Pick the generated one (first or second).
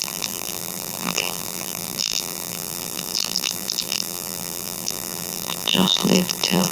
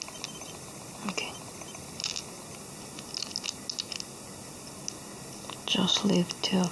first